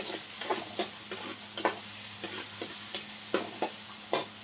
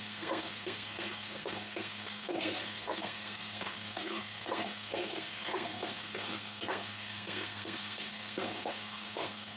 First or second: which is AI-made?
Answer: second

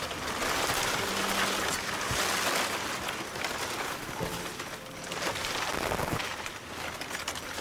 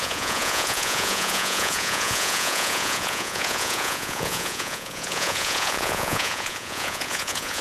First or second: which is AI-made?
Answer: second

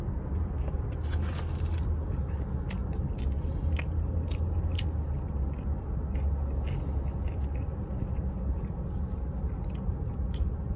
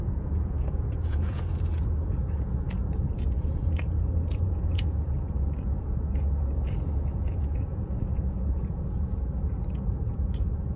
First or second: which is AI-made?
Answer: second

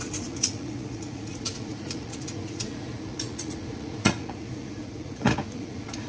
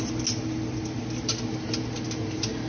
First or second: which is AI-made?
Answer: first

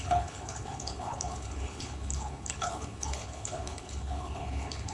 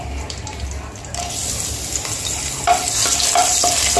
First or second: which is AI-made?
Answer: first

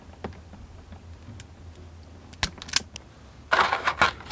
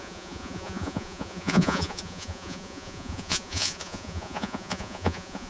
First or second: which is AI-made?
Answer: second